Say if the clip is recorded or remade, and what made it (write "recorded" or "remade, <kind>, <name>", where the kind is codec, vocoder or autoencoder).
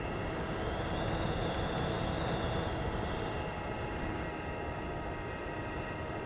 recorded